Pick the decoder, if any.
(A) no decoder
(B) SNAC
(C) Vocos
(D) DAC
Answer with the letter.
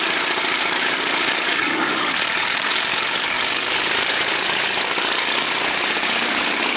D